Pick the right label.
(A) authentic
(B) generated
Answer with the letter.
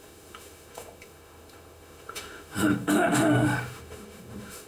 B